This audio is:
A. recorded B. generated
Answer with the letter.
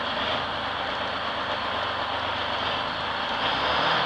A